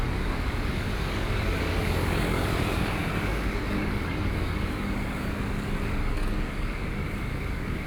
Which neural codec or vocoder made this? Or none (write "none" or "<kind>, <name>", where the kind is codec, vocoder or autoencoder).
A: codec, DAC